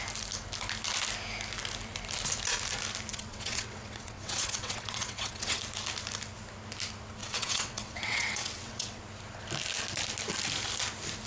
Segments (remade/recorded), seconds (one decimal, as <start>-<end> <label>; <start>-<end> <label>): 0.0-3.1 recorded; 3.1-5.6 remade; 5.6-7.2 recorded; 7.2-9.0 remade; 9.0-11.3 recorded